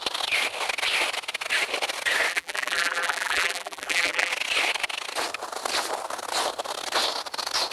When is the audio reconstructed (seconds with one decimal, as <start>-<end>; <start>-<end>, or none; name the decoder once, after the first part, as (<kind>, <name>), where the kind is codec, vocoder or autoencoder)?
2.3-4.3 (vocoder, BigVGAN v2)